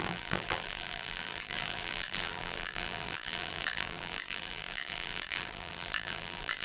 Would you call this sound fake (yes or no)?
yes